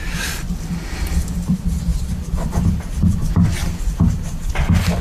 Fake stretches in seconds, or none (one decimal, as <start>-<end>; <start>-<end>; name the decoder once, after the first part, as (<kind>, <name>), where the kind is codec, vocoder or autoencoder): none